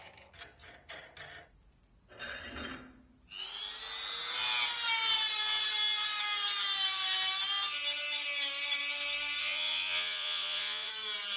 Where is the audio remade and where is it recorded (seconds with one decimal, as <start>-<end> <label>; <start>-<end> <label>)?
0.0-9.4 recorded; 9.4-10.9 remade; 10.9-11.4 recorded